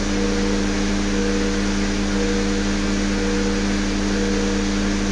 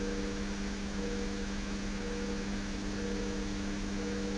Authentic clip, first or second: first